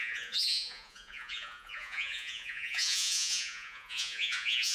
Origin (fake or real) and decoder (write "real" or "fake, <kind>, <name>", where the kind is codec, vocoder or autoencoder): fake, vocoder, Vocos